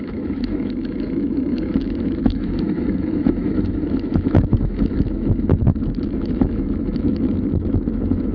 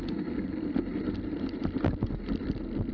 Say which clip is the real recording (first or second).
second